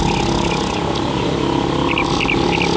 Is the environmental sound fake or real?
real